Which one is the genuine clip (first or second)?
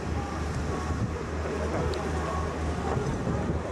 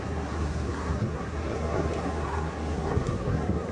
first